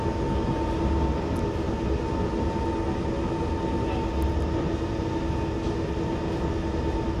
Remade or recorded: recorded